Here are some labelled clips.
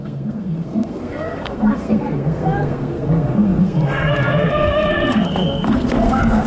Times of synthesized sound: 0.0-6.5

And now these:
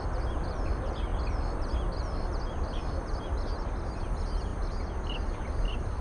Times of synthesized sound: none

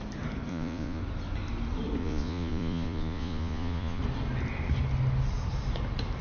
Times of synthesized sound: 0.5-1.0; 2.0-4.0

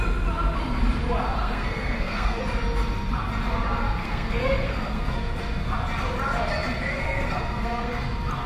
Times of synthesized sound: 1.4-2.4; 4.0-5.4; 6.9-7.9

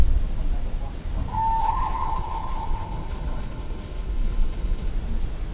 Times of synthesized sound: 1.6-4.9